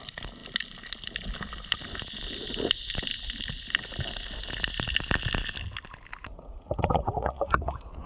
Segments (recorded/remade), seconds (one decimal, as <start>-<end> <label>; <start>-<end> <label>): 0.0-6.2 recorded; 6.2-8.1 remade